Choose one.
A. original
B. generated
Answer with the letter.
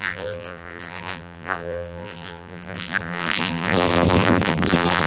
B